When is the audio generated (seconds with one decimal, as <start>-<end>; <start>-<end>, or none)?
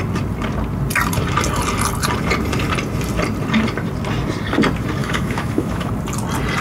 5.0-5.9